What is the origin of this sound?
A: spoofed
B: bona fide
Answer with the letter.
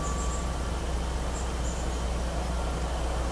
B